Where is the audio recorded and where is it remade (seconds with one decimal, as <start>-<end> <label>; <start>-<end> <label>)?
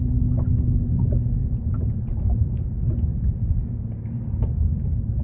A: 0.0-1.4 recorded; 1.4-2.7 remade; 2.7-3.1 recorded; 3.1-5.2 remade